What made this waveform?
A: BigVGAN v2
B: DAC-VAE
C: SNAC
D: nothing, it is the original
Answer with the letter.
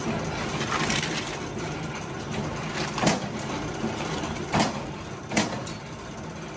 D